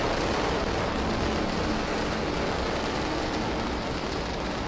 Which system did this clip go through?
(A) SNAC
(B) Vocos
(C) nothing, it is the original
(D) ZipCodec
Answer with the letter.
C